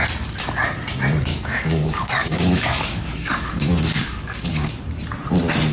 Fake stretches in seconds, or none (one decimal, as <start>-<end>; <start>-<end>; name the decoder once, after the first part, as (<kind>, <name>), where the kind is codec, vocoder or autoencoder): 1.3-4.7 (codec, DAC)